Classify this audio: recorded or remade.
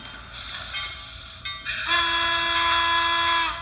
recorded